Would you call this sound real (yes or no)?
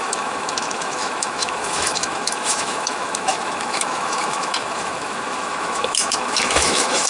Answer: no